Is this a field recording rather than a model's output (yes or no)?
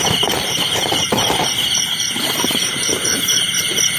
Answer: no